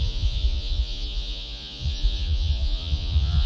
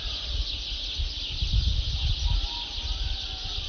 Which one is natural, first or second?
second